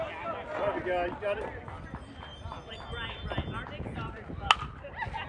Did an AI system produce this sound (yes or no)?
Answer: no